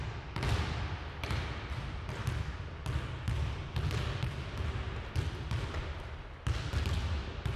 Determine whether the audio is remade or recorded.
recorded